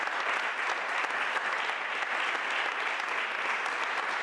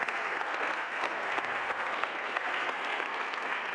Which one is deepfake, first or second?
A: second